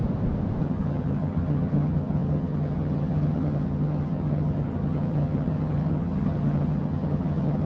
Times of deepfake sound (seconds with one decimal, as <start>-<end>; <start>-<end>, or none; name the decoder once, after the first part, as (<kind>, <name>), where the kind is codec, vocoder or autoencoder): 0.6-7.6 (vocoder, HiFi-GAN)